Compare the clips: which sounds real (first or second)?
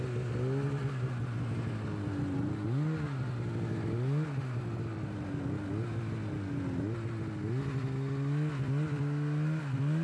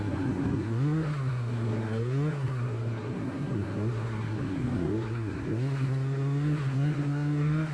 first